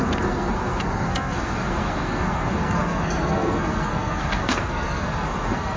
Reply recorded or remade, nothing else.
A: remade